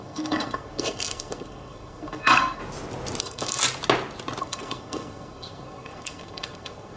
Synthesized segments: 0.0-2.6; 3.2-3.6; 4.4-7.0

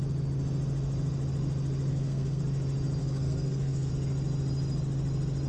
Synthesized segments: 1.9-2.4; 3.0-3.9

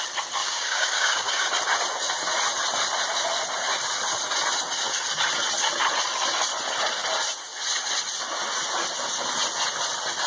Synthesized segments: 0.4-1.5

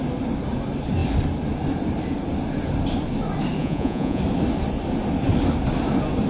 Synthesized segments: 3.6-4.2